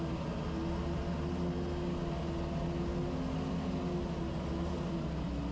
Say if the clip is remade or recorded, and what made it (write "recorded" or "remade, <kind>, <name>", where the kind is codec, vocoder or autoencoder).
recorded